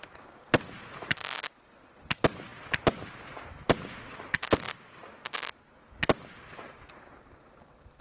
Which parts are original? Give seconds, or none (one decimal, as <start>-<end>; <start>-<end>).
0.0-8.0